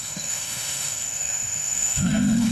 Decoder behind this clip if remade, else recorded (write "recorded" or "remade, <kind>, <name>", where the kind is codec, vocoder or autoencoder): remade, autoencoder, DAC-VAE